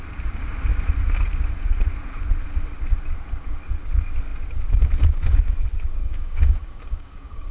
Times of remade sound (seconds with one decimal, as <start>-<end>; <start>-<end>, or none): 6.0-7.5